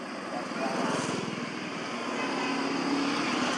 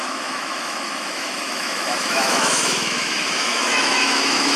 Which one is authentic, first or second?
first